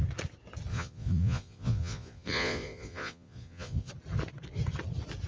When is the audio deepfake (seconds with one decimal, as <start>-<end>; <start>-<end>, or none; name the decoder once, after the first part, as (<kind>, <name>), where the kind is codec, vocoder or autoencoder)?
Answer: 0.7-3.9 (vocoder, Vocos)